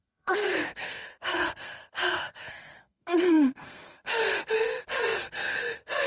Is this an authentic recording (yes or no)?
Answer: no